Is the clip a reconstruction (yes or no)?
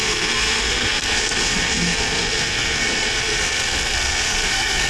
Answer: yes